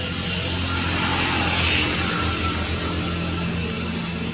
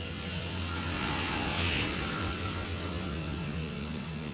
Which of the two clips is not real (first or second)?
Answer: second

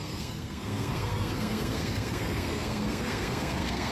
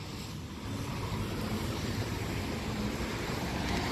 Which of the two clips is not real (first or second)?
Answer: first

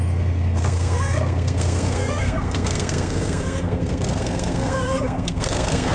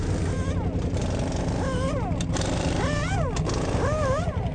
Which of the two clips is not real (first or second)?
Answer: first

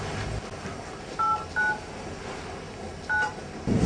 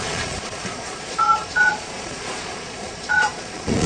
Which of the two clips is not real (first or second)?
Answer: second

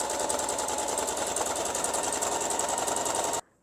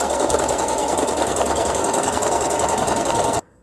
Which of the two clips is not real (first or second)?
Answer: second